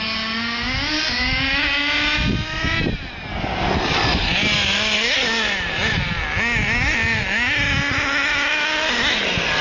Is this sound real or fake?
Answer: real